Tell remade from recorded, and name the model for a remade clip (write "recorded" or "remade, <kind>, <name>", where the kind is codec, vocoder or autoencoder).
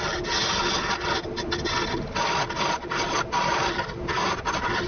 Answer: recorded